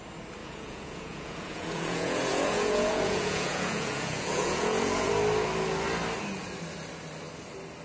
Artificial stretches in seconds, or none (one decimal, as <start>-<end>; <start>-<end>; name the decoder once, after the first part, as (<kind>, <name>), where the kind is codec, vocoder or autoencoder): 0.4-5.1 (vocoder, Vocos)